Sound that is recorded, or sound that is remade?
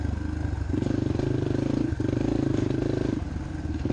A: recorded